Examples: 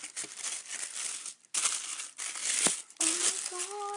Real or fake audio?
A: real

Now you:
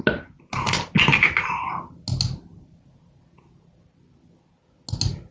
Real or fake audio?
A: real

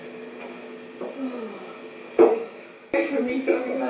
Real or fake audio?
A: real